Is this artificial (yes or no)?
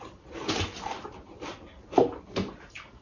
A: no